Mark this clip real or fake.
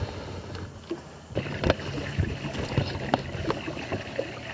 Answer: real